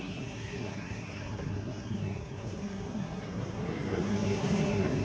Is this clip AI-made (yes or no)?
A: yes